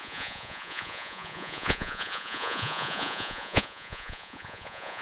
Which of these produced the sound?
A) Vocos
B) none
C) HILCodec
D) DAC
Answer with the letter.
A